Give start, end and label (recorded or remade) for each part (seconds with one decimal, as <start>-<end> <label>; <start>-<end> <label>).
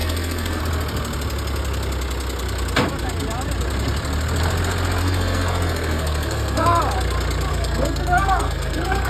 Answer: 0.0-0.6 remade; 0.6-5.0 recorded; 5.0-6.8 remade; 6.8-7.5 recorded; 7.5-9.1 remade